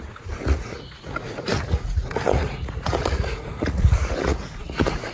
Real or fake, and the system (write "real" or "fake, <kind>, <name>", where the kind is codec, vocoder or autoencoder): fake, vocoder, Vocos